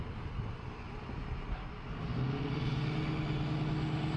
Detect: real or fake real